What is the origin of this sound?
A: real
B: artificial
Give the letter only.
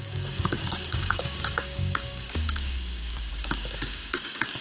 B